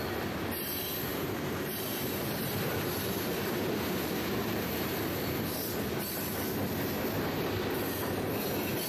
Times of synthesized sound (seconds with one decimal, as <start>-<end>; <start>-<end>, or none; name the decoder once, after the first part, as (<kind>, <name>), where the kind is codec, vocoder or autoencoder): 1.1-5.8 (vocoder, BigVGAN v2)

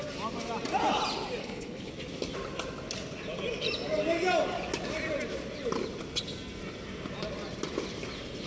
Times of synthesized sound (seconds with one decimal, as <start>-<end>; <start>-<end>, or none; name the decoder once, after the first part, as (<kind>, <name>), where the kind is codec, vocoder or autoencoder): 1.4-1.9 (codec, HILCodec)

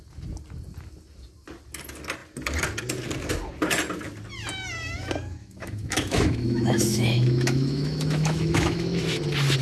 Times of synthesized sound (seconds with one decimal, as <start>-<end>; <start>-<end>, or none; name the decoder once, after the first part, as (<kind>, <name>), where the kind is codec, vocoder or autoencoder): 5.4-9.2 (autoencoder, DAC-VAE)

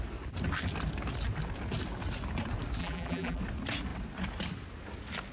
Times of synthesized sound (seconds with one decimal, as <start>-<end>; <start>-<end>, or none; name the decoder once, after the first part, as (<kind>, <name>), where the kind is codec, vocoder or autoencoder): 2.8-3.4 (vocoder, BigVGAN v2)

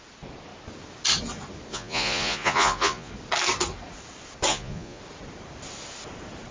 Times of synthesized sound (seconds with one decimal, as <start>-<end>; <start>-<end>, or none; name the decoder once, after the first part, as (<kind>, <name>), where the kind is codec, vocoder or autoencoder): 1.7-3.1 (vocoder, Vocos); 4.5-5.0

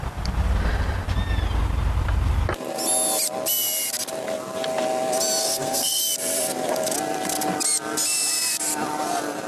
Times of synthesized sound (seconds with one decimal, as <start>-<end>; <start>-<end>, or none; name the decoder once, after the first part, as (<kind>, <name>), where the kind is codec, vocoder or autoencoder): 5.4-6.0 (codec, SNAC)

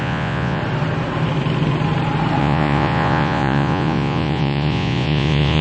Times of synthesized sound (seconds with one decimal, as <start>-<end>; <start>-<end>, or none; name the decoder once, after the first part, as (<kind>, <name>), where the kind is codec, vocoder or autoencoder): 0.0-0.6 (vocoder, Vocos); 2.4-5.6